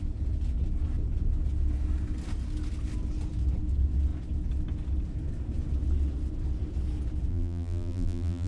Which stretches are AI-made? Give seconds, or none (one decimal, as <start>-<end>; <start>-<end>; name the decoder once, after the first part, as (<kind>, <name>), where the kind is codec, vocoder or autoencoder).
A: 7.3-8.5 (vocoder, BigVGAN v2)